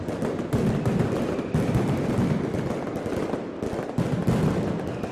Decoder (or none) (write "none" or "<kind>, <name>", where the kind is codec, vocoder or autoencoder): none